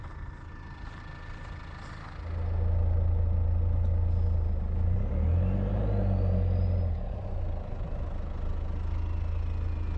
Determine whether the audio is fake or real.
real